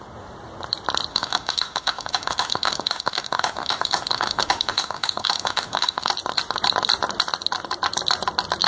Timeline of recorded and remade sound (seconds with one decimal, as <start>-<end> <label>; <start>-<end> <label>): 0.0-1.1 recorded; 1.1-6.1 remade; 6.1-8.7 recorded